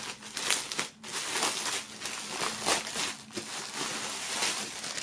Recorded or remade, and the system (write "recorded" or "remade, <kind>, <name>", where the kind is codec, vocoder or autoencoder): recorded